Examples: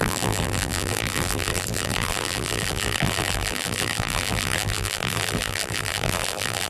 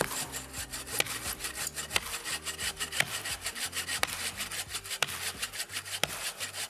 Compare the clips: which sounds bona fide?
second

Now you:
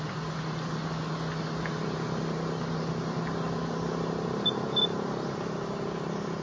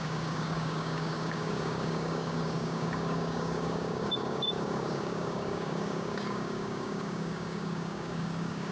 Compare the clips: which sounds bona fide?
first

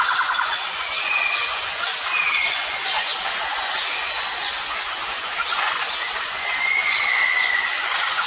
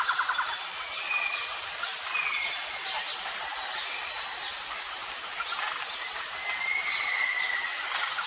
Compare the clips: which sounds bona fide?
second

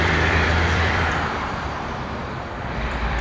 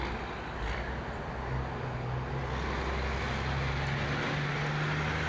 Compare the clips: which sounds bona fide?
second